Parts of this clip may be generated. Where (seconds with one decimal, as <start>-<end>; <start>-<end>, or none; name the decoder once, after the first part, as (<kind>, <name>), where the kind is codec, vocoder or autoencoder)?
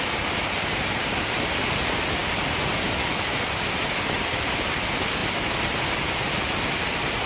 none